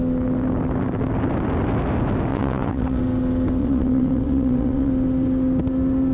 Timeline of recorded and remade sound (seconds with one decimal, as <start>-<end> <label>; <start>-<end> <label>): 0.0-2.3 recorded; 2.3-3.0 remade; 3.0-3.6 recorded; 3.6-4.9 remade; 4.9-6.1 recorded